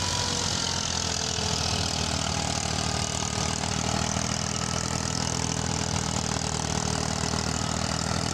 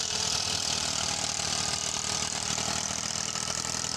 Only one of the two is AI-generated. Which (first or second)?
second